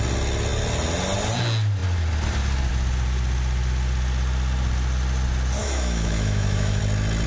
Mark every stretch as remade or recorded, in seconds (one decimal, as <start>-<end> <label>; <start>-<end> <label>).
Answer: 0.0-5.6 recorded; 5.6-6.8 remade; 6.8-7.3 recorded